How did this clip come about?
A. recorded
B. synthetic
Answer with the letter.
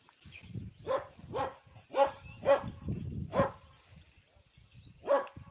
A